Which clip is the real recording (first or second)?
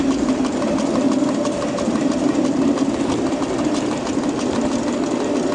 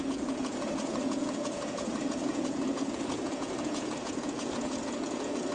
first